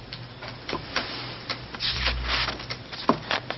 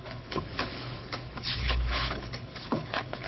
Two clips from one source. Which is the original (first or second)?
first